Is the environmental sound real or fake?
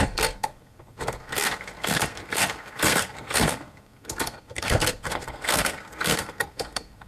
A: fake